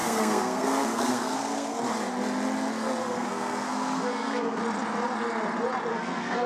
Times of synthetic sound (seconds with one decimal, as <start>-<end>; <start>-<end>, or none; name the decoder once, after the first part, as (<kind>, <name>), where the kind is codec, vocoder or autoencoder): 0.0-1.8 (codec, SNAC); 3.0-4.6; 5.9-6.5